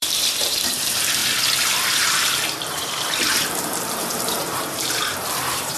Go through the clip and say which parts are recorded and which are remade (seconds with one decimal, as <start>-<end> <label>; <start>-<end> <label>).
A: 0.0-1.2 remade; 1.2-2.0 recorded; 2.0-5.8 remade